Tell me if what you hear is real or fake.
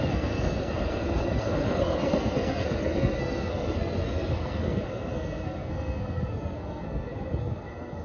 fake